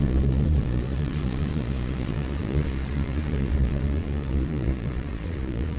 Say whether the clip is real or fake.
fake